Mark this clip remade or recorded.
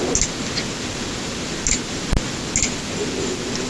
recorded